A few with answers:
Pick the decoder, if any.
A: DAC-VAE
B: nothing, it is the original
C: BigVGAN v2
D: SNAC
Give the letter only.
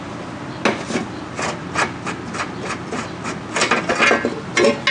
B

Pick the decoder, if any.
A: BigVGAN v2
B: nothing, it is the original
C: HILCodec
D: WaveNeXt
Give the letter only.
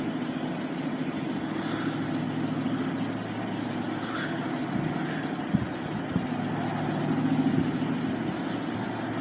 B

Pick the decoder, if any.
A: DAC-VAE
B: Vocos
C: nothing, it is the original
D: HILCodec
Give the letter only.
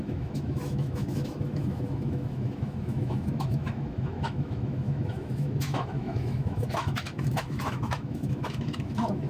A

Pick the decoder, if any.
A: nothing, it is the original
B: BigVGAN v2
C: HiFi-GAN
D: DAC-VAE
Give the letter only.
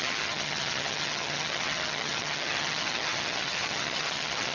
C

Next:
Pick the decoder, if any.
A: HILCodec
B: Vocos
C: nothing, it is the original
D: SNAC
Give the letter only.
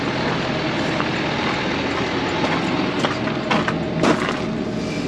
C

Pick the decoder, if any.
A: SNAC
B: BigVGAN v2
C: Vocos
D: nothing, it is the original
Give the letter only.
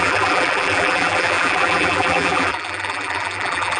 B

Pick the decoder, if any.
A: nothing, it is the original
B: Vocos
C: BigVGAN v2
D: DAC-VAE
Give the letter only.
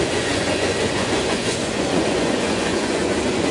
B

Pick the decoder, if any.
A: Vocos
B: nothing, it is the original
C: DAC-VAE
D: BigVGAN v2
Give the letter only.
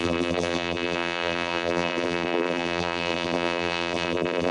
D